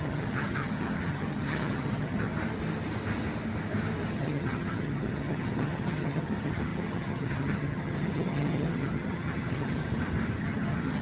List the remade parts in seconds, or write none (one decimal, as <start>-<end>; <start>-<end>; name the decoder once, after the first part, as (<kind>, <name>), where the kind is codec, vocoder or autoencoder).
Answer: 0.0-2.3 (vocoder, HiFi-GAN); 4.1-9.8; 10.4-11.0